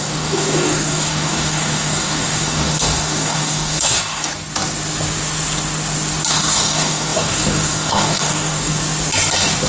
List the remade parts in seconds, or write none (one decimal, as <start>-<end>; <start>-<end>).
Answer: 0.0-4.3; 6.3-8.8